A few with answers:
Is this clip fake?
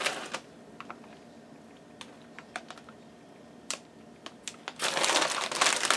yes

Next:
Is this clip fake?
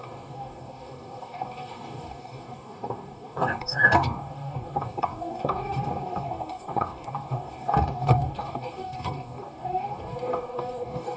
yes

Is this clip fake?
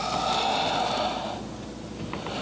no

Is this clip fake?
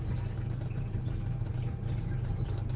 yes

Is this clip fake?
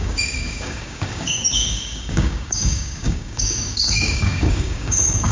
yes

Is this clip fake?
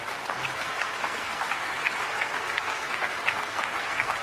yes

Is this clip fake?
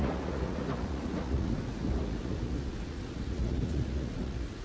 yes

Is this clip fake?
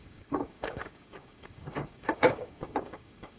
yes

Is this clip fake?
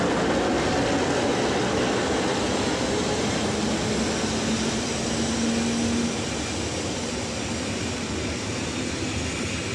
no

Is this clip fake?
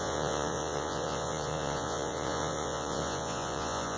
yes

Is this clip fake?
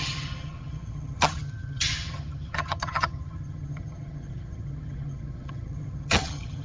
yes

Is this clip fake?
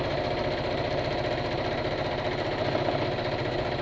no